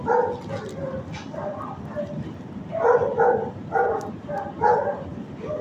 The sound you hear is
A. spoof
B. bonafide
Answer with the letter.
B